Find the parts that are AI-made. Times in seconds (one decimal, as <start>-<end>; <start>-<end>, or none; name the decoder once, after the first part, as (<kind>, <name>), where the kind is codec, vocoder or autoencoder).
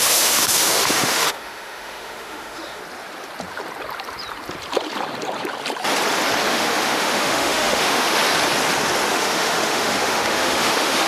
0.0-2.8 (autoencoder, DAC-VAE); 6.5-8.2; 9.1-11.1